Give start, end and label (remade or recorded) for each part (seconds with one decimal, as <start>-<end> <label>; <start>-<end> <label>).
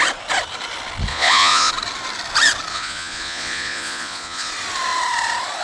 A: 0.0-1.1 recorded; 1.1-1.7 remade; 1.7-2.7 recorded; 2.7-4.5 remade; 4.5-5.6 recorded